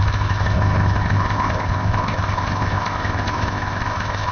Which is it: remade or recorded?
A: remade